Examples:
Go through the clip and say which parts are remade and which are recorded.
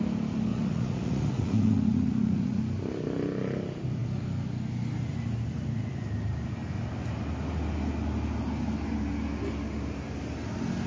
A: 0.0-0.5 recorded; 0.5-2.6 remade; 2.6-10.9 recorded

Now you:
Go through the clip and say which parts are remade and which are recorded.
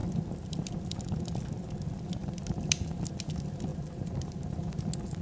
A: 0.0-0.8 remade; 0.8-2.2 recorded; 2.2-2.8 remade; 2.8-3.7 recorded; 3.7-4.8 remade; 4.8-5.2 recorded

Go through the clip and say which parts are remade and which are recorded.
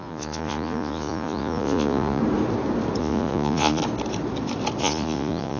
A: 0.0-2.2 remade; 2.2-3.0 recorded; 3.0-3.8 remade; 3.8-4.8 recorded; 4.8-5.6 remade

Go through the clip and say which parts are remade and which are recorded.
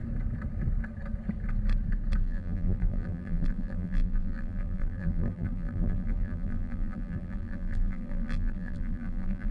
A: 0.0-2.2 recorded; 2.2-9.5 remade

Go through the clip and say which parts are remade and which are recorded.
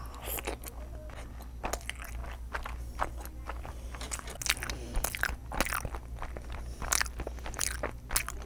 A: 0.0-8.5 recorded